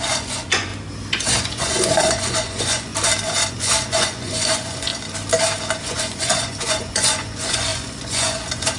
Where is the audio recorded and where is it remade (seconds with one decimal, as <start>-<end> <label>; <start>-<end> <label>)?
0.0-0.7 remade; 0.7-1.4 recorded; 1.4-2.9 remade; 2.9-3.5 recorded; 3.5-4.9 remade; 4.9-5.8 recorded; 5.8-8.8 remade